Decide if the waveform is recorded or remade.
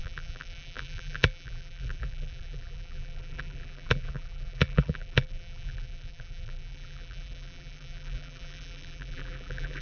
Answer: remade